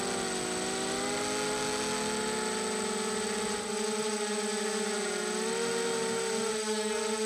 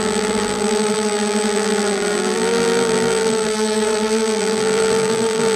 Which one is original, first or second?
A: first